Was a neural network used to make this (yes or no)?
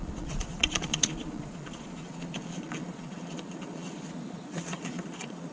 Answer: yes